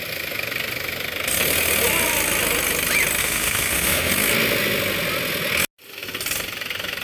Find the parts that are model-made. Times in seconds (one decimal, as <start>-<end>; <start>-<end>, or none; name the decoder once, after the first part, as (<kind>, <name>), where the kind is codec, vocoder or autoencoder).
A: 3.2-4.1 (autoencoder, DAC-VAE)